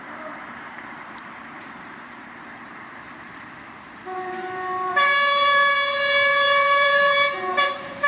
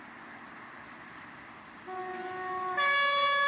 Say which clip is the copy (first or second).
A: first